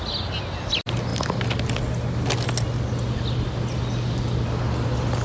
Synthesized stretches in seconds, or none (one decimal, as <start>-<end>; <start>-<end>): none